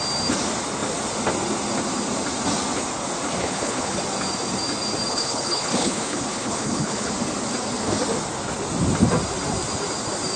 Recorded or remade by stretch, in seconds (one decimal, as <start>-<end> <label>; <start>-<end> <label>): 0.0-3.4 recorded; 3.4-4.0 remade; 4.0-5.1 recorded; 5.1-7.1 remade; 7.1-10.4 recorded